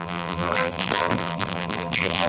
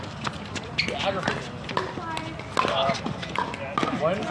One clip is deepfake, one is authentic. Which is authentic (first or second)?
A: second